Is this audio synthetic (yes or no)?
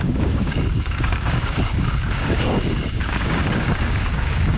yes